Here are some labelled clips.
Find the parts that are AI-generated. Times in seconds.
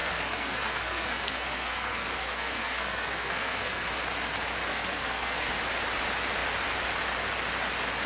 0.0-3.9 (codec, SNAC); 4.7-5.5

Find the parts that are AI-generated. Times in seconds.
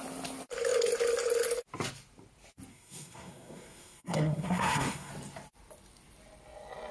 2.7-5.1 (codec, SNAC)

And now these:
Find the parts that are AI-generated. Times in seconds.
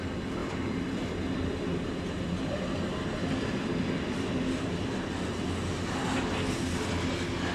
0.4-4.9 (vocoder, BigVGAN v2)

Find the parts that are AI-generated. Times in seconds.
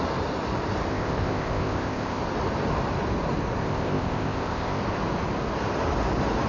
0.9-2.2 (codec, ZipCodec); 3.6-4.8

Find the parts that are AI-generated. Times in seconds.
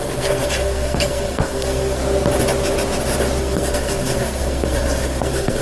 0.0-2.0 (codec, SNAC); 3.4-5.6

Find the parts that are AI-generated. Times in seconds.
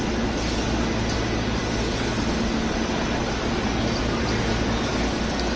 none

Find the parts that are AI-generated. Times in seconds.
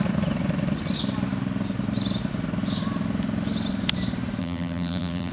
4.4-5.3 (vocoder, BigVGAN v2)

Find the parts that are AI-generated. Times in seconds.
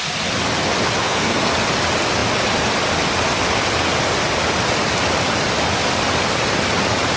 1.0-1.5 (codec, SNAC)